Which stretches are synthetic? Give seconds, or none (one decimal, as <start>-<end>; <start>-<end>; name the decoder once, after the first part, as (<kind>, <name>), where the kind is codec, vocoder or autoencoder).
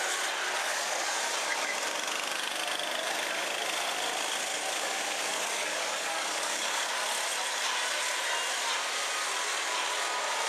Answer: 0.6-1.2 (codec, DAC); 4.5-6.9